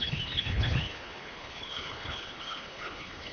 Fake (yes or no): yes